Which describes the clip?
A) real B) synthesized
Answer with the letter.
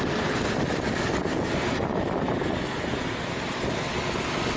A